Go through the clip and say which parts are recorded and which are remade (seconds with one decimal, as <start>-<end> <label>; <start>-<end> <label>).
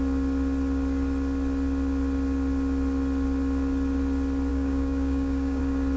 0.0-4.5 recorded; 4.5-5.6 remade; 5.6-6.0 recorded